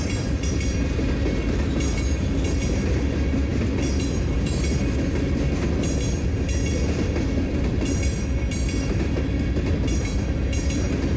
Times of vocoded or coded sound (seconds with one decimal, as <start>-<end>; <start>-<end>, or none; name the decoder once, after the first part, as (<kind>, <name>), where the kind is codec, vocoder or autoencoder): none

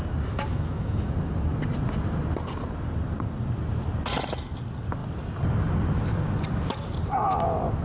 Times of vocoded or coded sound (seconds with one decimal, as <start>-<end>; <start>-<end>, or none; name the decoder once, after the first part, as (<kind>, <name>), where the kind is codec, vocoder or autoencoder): 0.5-1.1 (autoencoder, DAC-VAE)

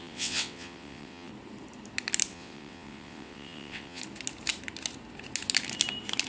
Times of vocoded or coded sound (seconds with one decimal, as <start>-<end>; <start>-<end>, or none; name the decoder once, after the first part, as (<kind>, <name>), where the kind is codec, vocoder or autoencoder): 0.0-1.3 (vocoder, WaveNeXt); 2.3-4.0